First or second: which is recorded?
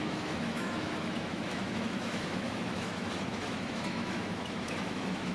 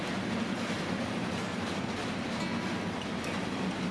second